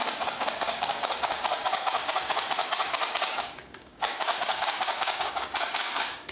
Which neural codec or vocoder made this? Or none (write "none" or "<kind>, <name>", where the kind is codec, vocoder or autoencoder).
codec, DAC